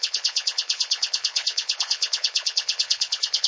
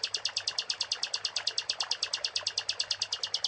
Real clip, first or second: second